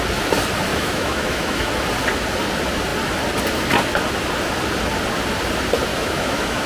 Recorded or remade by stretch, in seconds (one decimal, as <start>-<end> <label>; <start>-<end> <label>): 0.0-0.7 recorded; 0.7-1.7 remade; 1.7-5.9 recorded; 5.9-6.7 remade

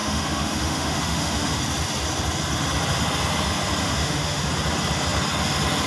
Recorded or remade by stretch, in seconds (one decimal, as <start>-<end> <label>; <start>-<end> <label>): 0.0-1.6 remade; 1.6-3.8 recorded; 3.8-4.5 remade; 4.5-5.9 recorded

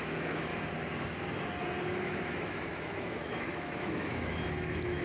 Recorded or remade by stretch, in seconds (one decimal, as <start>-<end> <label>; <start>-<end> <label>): 0.0-0.5 remade; 0.5-2.0 recorded; 2.0-5.0 remade

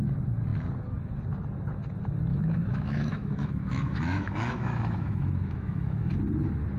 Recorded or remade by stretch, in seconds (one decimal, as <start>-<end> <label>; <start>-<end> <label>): 0.0-2.3 recorded; 2.3-6.2 remade; 6.2-6.8 recorded